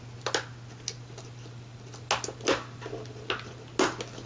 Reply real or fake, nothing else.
real